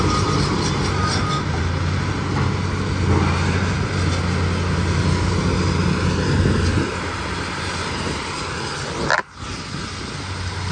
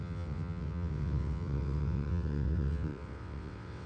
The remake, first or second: second